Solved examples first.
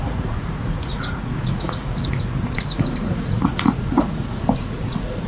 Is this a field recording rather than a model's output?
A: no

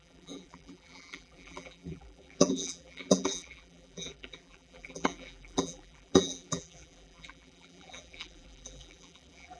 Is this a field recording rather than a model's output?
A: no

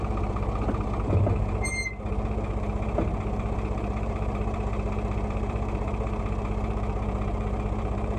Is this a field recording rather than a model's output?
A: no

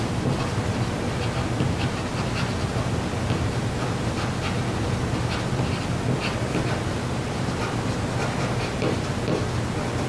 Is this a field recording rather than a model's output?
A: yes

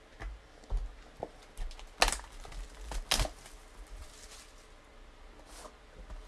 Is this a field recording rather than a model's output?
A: yes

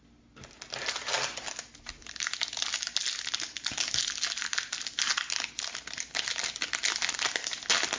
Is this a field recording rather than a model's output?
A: yes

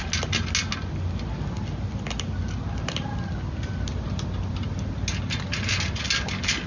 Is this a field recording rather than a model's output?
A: yes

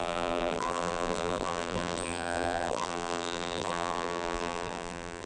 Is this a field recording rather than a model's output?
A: no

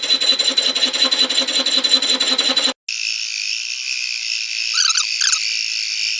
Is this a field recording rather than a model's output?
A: yes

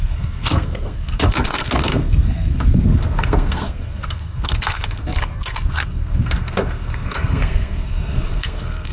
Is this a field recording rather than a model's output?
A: no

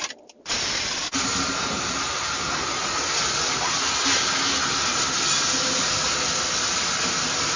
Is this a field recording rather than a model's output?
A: yes